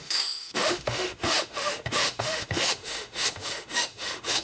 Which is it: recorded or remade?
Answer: remade